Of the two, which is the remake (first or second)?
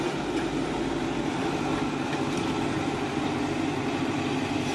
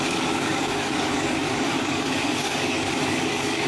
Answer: second